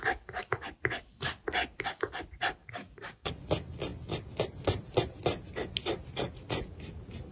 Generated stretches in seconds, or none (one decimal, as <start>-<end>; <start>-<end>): 2.6-3.3